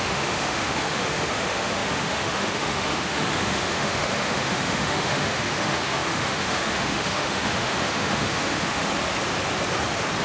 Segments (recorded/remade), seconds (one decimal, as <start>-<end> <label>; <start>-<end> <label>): 0.0-8.9 remade; 8.9-10.2 recorded

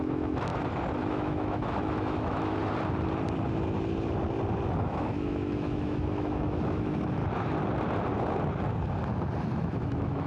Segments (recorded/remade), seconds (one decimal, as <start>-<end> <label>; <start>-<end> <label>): 0.0-0.5 remade; 0.5-1.0 recorded; 1.0-2.6 remade; 2.6-4.8 recorded; 4.8-7.2 remade; 7.2-9.6 recorded; 9.6-10.3 remade

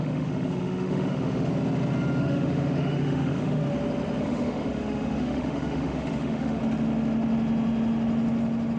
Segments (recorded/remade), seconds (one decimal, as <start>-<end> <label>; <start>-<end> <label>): 0.0-1.5 remade; 1.5-2.2 recorded; 2.2-3.6 remade; 3.6-4.2 recorded; 4.2-6.6 remade; 6.6-8.8 recorded

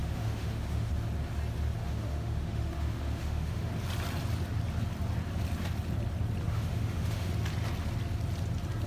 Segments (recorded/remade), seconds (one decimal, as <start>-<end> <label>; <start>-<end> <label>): 0.0-0.9 remade; 0.9-1.8 recorded; 1.8-3.7 remade; 3.7-6.5 recorded; 6.5-7.3 remade; 7.3-8.9 recorded

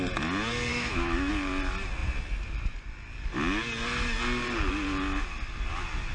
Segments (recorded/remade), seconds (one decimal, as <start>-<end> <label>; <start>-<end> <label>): 0.0-0.7 recorded; 0.7-1.3 remade; 1.3-6.1 recorded

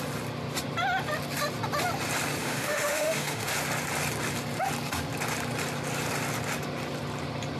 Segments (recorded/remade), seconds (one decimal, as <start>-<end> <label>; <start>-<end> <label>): 0.0-2.4 recorded; 2.4-3.5 remade; 3.5-7.6 recorded